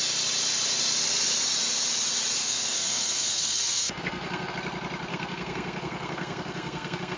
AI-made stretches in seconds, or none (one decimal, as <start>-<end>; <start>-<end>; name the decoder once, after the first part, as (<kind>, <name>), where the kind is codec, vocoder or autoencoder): 2.4-4.5 (codec, SNAC); 5.1-7.2